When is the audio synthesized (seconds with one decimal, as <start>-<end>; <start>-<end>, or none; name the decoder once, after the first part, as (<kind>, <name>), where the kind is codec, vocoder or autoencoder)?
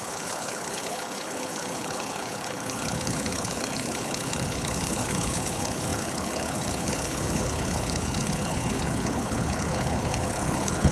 0.0-10.9 (codec, HILCodec)